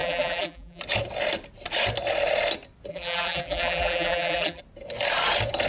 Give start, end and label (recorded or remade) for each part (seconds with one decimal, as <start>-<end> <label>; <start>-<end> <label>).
0.0-0.8 remade; 0.8-2.9 recorded; 2.9-4.6 remade; 4.6-5.7 recorded